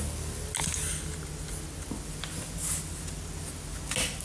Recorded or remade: recorded